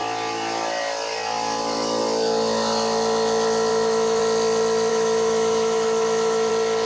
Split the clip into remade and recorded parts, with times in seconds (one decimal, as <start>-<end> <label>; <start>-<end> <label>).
0.0-3.7 recorded; 3.7-4.2 remade; 4.2-4.9 recorded; 4.9-6.5 remade; 6.5-6.9 recorded

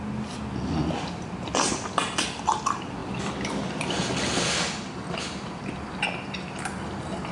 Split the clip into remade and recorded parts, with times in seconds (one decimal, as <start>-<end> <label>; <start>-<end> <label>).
0.0-7.3 recorded